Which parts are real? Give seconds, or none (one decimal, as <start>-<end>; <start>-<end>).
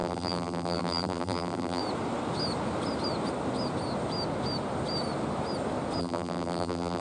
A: 1.8-6.0